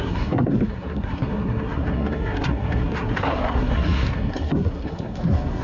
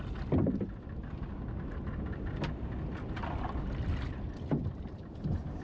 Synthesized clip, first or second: first